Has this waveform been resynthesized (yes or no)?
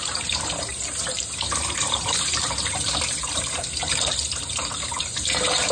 yes